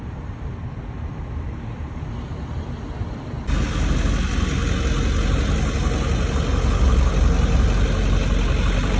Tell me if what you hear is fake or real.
real